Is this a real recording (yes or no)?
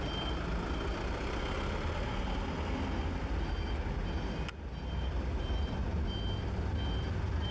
yes